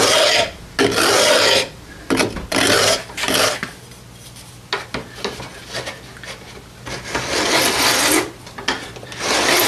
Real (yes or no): yes